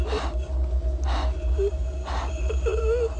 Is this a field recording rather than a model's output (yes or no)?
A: yes